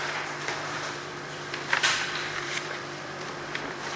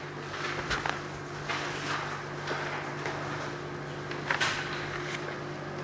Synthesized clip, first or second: first